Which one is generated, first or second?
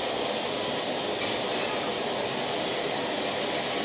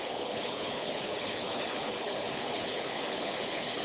second